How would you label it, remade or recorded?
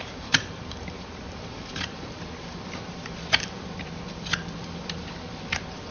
remade